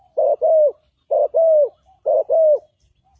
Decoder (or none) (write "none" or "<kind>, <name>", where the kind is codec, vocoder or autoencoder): none